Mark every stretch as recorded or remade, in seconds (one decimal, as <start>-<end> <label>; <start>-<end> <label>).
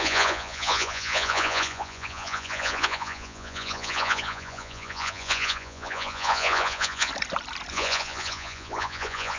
0.0-7.1 remade; 7.1-7.7 recorded; 7.7-9.4 remade